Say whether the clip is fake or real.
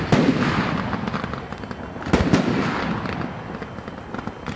real